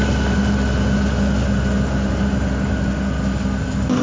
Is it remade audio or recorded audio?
recorded